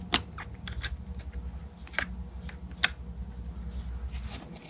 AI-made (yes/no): no